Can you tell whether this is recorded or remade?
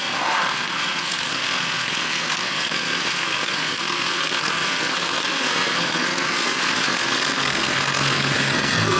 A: remade